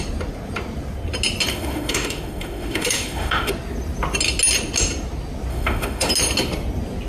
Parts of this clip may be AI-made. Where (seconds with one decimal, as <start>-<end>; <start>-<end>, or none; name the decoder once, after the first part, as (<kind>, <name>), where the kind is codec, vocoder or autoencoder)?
1.5-3.5 (autoencoder, DAC-VAE); 5.5-6.1